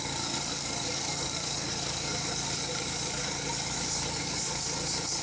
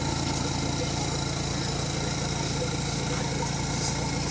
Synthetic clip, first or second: first